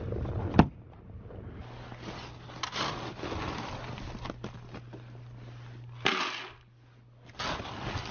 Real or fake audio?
real